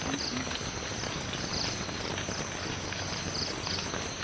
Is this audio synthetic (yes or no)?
no